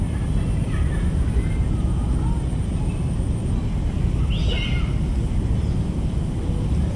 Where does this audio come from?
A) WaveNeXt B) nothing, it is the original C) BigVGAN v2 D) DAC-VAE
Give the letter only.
B